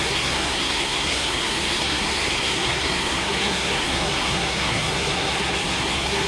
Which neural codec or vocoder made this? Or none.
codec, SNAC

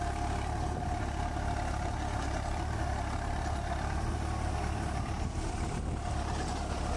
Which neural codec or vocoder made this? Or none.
none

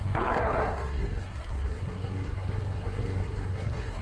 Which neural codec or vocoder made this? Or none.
codec, SNAC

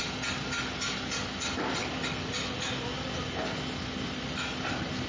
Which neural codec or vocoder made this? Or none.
none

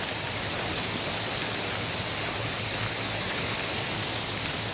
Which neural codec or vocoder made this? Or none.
none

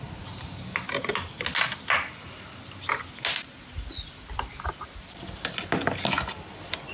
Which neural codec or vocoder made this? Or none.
none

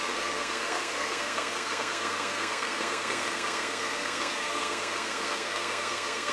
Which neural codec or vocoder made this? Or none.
codec, SNAC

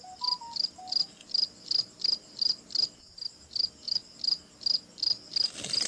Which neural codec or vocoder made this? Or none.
none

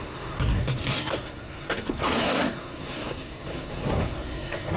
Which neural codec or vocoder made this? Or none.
codec, SNAC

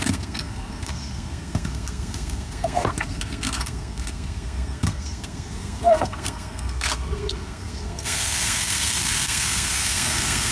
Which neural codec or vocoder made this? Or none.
codec, SNAC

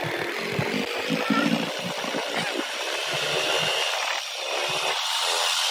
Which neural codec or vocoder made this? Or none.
none